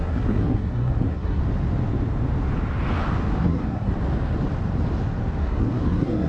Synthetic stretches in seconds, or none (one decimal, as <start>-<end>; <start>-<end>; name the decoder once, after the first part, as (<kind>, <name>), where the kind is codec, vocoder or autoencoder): 0.0-1.4 (codec, SNAC); 3.4-3.9; 5.4-6.3